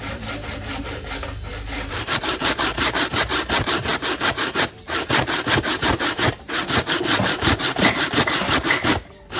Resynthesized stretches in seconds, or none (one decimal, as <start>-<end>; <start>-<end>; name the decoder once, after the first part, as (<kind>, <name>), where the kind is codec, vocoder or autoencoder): 0.0-9.4 (vocoder, BigVGAN v2)